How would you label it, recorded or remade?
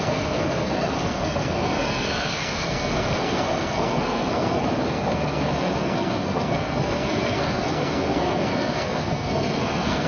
remade